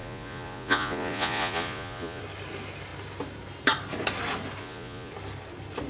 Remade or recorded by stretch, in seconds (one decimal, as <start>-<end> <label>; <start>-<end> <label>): 0.0-2.2 remade; 2.2-4.6 recorded; 4.6-5.1 remade; 5.1-5.9 recorded